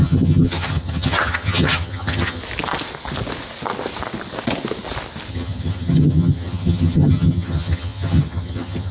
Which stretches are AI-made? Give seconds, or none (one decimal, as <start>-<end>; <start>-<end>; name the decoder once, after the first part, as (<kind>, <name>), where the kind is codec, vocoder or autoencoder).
0.0-2.4 (vocoder, HiFi-GAN); 5.3-8.9